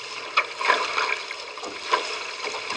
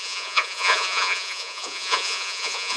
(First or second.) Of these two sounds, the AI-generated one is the second